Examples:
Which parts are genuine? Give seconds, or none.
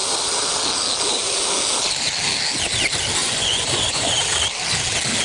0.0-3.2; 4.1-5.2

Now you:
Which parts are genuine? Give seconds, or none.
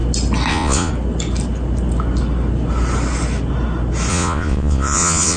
0.0-0.5; 0.9-4.1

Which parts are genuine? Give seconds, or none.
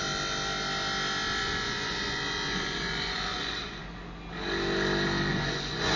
0.0-1.4; 3.8-5.3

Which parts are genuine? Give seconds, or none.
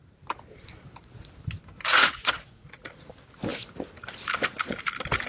0.0-1.9; 3.1-5.3